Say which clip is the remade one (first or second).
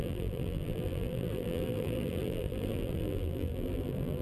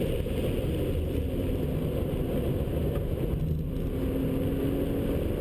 first